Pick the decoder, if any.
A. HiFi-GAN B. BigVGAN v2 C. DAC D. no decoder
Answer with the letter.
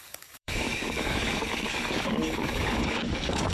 C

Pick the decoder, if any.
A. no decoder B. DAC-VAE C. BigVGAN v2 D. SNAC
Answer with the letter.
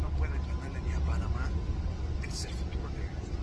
A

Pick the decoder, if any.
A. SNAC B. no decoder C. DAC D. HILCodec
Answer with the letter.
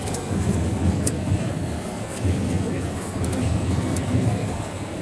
A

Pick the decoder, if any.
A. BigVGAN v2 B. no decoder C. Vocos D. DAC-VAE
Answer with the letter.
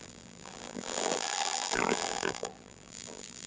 A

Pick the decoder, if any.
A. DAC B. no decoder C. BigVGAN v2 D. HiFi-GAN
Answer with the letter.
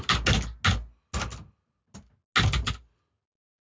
B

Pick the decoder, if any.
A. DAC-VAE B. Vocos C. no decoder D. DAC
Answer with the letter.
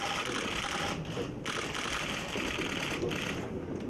C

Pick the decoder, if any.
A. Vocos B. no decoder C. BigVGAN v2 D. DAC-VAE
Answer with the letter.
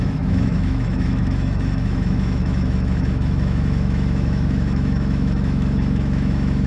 D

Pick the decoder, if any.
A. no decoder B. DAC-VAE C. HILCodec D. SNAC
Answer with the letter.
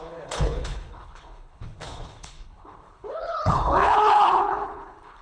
C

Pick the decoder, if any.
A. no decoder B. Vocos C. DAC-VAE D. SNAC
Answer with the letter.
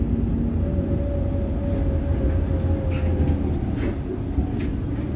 A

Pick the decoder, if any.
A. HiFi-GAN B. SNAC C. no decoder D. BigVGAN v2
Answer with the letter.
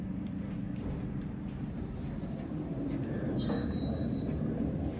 D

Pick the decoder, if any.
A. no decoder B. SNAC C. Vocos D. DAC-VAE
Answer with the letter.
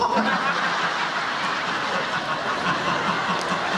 A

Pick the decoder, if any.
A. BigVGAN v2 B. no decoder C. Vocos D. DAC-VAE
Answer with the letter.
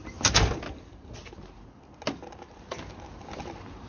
B